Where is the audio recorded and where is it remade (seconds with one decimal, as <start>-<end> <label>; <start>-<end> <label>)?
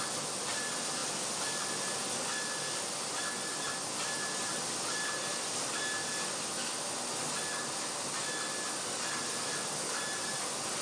0.0-10.8 recorded